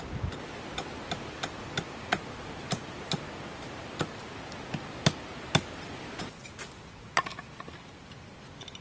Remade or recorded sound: recorded